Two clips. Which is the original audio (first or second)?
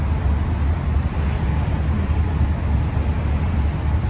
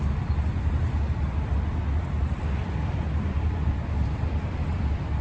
first